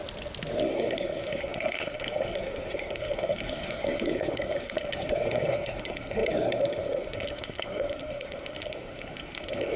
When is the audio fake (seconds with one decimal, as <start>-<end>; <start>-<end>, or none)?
0.6-9.8